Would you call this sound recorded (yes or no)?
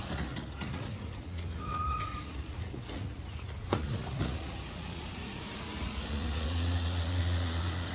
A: no